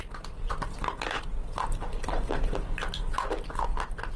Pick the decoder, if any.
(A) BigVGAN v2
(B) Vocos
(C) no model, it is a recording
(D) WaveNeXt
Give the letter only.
C